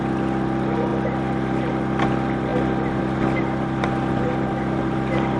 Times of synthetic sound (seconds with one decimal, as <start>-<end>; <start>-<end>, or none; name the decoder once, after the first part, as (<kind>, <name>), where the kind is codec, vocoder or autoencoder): none